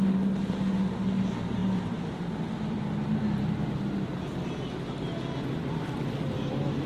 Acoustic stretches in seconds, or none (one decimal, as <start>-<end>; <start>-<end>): 0.0-1.6; 2.8-6.9

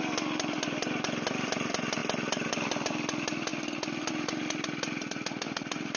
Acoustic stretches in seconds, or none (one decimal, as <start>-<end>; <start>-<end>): 0.0-6.0